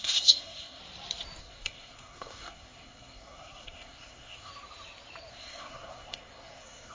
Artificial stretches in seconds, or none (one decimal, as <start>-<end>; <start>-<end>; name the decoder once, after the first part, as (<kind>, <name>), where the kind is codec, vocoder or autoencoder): 0.0-0.8 (codec, SNAC); 1.4-4.5; 5.3-6.9